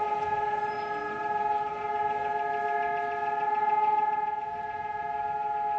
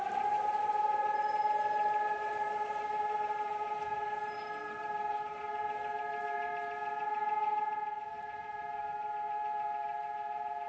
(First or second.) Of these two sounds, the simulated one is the second